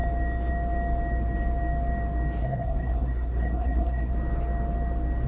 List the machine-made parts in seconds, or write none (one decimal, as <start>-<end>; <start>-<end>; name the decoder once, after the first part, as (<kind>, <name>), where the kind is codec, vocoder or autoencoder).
2.4-4.1 (codec, SNAC)